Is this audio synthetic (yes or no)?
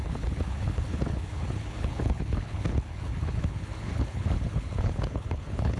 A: yes